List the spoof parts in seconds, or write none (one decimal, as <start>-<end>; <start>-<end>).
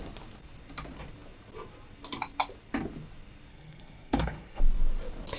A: 3.5-4.6